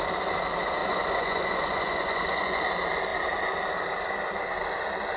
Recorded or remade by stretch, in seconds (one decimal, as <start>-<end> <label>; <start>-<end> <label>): 0.0-0.8 recorded; 0.8-2.6 remade; 2.6-5.2 recorded